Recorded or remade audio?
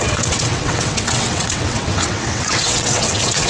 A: remade